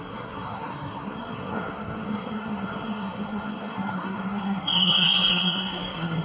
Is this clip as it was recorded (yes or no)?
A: no